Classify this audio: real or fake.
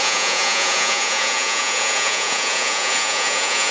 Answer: fake